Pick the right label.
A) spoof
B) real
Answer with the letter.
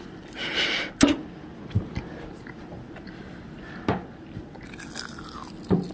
B